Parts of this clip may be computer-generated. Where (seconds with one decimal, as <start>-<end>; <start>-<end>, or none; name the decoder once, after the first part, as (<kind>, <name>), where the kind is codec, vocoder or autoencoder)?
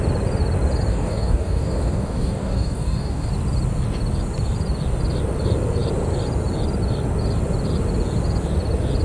0.9-3.3 (codec, DAC)